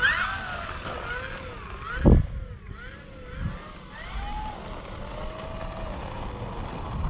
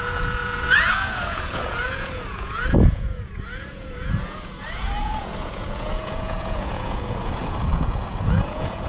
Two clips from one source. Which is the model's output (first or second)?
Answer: second